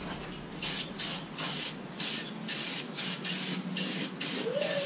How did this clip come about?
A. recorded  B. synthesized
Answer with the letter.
A